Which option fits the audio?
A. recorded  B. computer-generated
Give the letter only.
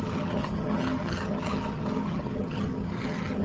B